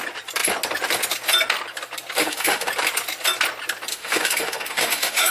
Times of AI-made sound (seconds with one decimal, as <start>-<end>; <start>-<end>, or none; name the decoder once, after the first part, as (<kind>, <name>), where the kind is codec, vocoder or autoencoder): 2.2-2.7 (autoencoder, DAC-VAE); 3.9-5.3